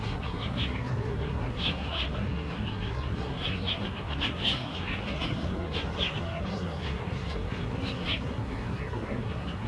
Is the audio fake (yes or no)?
yes